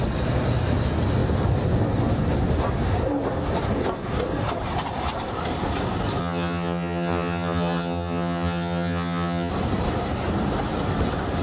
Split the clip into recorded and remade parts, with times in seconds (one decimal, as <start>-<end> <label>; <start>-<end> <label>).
0.0-6.2 recorded; 6.2-9.5 remade; 9.5-11.4 recorded